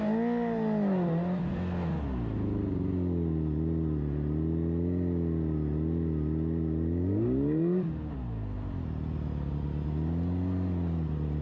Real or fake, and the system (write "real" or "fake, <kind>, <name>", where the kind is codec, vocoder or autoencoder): real